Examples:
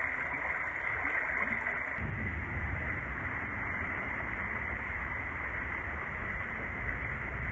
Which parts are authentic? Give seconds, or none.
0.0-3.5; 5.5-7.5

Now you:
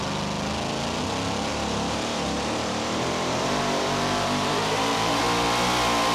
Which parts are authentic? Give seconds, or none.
0.0-1.5; 5.2-6.1

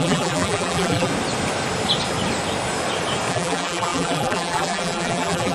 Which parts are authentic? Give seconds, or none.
1.1-3.3

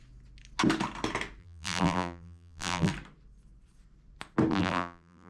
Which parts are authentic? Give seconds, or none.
0.0-1.4; 2.9-4.5

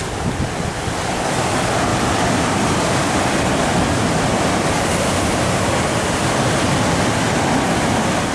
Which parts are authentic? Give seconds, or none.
0.0-1.9; 6.2-8.3